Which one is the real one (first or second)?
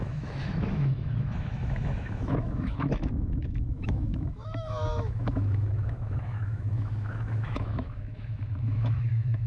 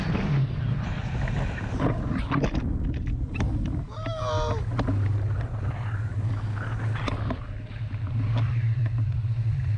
second